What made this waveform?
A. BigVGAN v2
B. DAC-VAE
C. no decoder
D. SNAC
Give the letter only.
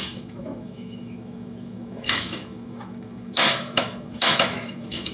B